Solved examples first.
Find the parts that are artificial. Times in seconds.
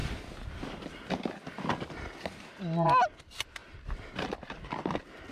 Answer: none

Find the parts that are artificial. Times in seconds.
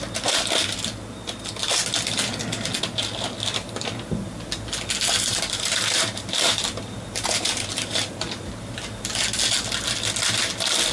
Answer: 5.3-9.2 (vocoder, BigVGAN v2)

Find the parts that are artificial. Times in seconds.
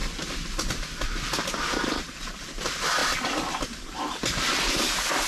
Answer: none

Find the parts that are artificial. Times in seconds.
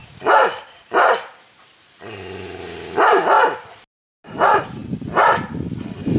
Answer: 4.8-5.4 (vocoder, BigVGAN v2)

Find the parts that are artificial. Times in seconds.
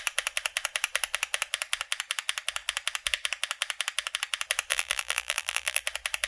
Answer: 4.7-5.8 (vocoder, BigVGAN v2)